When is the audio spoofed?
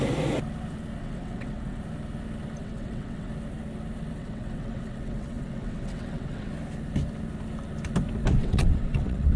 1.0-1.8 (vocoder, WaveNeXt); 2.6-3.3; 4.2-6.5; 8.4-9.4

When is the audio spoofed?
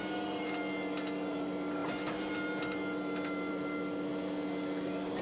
none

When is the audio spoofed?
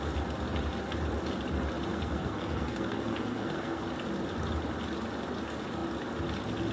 1.9-3.8 (codec, SNAC)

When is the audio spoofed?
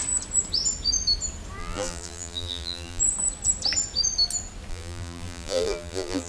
1.6-3.0 (vocoder, BigVGAN v2); 4.7-6.3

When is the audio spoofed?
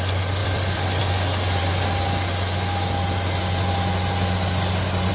0.4-1.0 (vocoder, BigVGAN v2)